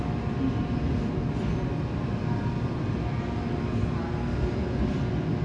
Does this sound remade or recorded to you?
recorded